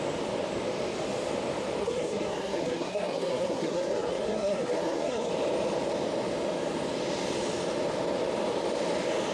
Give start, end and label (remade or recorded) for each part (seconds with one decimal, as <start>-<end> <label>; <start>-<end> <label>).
0.0-1.8 recorded; 1.8-5.3 remade; 5.3-9.3 recorded